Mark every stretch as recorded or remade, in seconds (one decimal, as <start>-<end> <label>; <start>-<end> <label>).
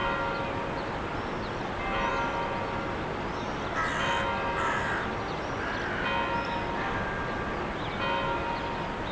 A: 0.0-9.1 recorded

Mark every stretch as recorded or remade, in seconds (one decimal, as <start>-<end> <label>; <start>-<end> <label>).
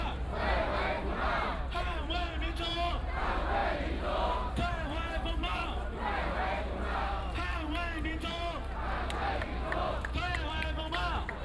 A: 0.0-11.4 remade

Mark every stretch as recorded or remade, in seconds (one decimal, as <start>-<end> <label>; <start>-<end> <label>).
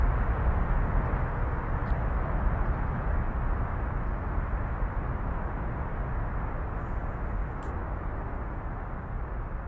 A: 0.0-7.4 recorded; 7.4-8.6 remade; 8.6-9.7 recorded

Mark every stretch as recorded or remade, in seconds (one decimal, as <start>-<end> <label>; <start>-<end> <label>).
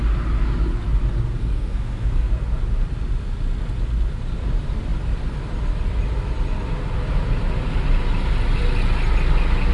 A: 0.0-1.4 recorded; 1.4-2.3 remade; 2.3-9.7 recorded